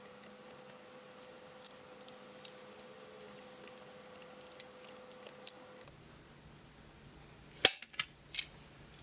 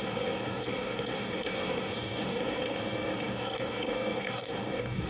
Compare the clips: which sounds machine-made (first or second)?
second